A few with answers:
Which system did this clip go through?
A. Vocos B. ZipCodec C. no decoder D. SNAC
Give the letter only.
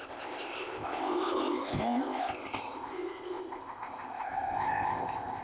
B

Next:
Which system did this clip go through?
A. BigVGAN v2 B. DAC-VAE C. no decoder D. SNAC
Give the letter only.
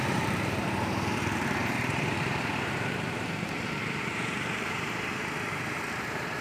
A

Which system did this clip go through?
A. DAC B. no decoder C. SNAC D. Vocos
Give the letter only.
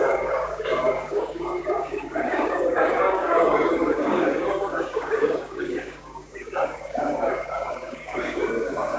A